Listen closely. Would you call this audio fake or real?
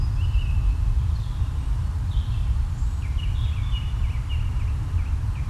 real